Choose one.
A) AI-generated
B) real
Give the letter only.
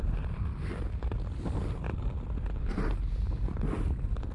B